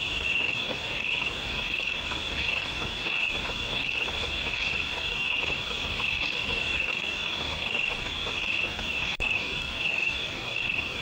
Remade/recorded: remade